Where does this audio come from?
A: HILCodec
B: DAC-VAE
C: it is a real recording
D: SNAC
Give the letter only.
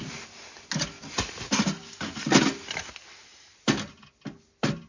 C